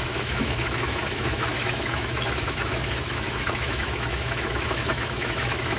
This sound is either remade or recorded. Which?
remade